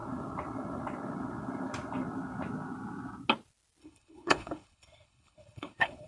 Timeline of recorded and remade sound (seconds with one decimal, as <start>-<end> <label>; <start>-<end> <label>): 0.0-3.8 recorded; 3.8-6.1 remade